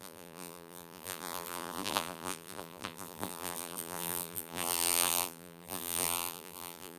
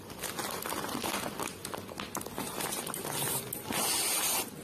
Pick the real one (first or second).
second